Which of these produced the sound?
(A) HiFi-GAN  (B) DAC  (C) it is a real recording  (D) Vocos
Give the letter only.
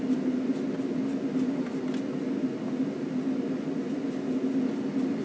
C